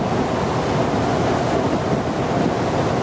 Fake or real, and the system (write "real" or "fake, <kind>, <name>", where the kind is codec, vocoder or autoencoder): real